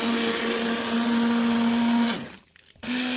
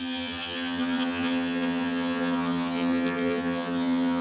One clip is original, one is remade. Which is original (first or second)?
first